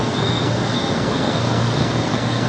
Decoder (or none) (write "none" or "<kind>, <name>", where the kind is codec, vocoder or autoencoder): codec, SNAC